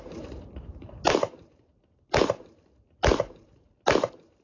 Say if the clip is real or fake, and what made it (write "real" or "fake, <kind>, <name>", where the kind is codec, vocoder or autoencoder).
real